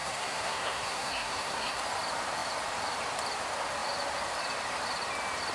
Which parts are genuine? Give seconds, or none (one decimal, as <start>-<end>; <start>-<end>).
1.8-5.5